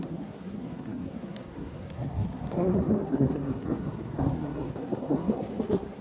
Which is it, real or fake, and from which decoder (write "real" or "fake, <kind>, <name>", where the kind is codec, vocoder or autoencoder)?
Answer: fake, codec, SNAC